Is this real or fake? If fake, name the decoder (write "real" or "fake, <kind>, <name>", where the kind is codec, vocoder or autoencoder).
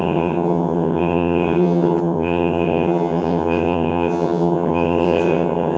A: fake, vocoder, HiFi-GAN